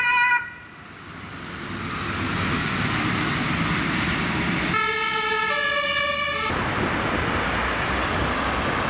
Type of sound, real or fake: real